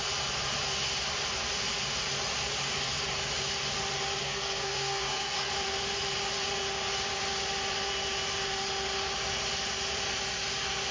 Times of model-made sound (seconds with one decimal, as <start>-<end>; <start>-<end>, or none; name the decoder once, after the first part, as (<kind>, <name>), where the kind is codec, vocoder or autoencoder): 4.2-5.5 (codec, SNAC)

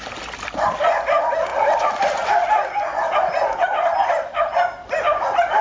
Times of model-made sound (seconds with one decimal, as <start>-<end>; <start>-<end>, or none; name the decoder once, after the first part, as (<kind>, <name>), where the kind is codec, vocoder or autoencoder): none

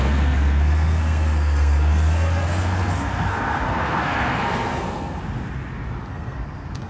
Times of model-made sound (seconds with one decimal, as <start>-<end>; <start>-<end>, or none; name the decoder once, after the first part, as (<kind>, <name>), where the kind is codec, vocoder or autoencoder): 0.0-5.2 (codec, SNAC); 6.1-6.9

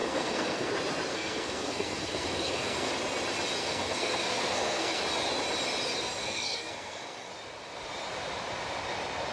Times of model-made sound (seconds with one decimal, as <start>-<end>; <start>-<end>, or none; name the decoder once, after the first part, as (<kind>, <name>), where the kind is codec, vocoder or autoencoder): 0.0-0.7 (codec, SNAC); 1.1-2.9; 3.6-5.0; 6.2-7.3

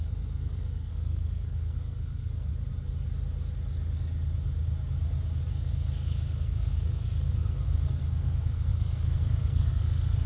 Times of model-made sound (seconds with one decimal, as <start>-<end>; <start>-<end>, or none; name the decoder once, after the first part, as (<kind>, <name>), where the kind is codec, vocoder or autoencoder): 0.0-2.5 (codec, SNAC); 5.5-10.3

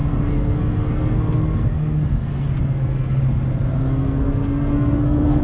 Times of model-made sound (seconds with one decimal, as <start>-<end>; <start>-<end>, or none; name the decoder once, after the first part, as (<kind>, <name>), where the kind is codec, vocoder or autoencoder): 0.0-3.2 (codec, SNAC); 3.8-5.4

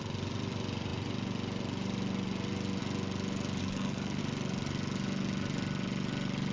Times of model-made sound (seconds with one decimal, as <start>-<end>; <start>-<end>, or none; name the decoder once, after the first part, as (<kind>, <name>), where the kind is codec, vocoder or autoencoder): 3.6-4.2 (codec, SNAC)

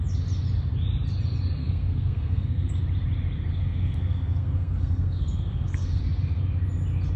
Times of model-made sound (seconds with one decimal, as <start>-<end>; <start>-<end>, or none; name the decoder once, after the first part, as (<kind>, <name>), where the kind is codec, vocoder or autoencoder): 1.6-2.7 (codec, SNAC); 3.5-6.0